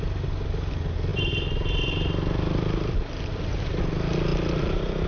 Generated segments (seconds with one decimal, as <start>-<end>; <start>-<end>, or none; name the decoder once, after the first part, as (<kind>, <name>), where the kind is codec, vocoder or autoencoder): 1.1-3.8 (vocoder, BigVGAN v2); 4.3-5.1